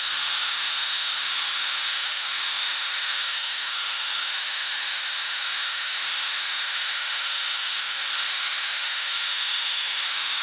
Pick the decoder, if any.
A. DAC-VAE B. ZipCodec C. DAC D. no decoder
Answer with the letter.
A